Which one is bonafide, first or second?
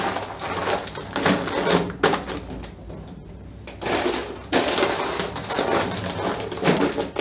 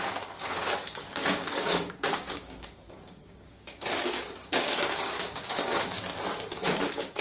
first